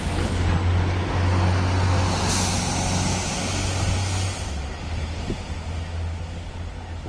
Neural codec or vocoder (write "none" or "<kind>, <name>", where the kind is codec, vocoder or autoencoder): none